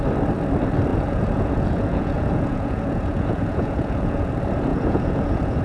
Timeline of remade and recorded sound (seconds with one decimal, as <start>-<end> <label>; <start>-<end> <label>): 0.0-0.9 recorded; 0.9-4.3 remade; 4.3-4.7 recorded; 4.7-5.6 remade